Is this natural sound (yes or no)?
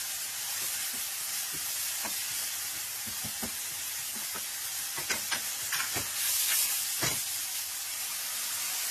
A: yes